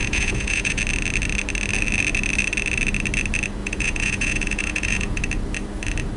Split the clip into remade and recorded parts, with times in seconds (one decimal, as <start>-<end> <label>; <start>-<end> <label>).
0.0-0.8 remade; 0.8-3.6 recorded; 3.6-5.2 remade; 5.2-6.2 recorded